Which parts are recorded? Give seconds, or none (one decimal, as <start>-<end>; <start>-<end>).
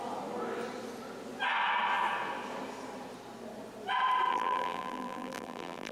0.0-4.3